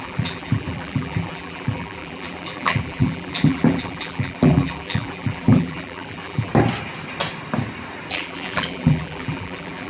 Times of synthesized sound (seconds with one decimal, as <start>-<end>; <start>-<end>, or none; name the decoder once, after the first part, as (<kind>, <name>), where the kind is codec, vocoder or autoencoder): 0.0-6.5 (vocoder, BigVGAN v2); 8.1-9.9